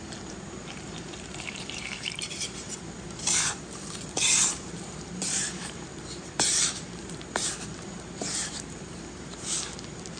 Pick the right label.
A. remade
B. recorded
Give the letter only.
A